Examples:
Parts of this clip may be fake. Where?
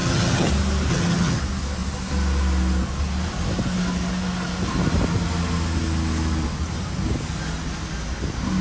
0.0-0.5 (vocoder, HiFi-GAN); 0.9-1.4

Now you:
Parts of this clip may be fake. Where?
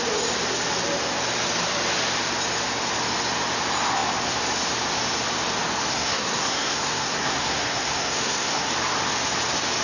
5.9-8.7 (codec, SNAC)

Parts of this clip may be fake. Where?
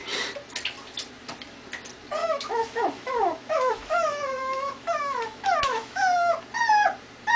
2.2-6.3 (autoencoder, DAC-VAE)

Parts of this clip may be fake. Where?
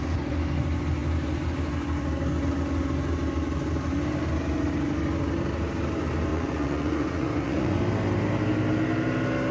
6.3-7.8 (vocoder, Vocos)